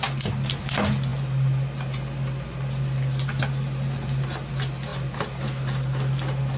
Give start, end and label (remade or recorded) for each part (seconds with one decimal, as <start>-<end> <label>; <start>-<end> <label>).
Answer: 0.0-6.6 recorded